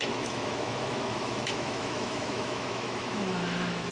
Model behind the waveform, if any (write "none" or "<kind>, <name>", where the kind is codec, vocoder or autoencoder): autoencoder, DAC-VAE